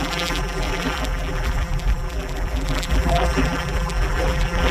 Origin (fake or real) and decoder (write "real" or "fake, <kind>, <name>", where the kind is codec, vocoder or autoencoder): fake, vocoder, BigVGAN v2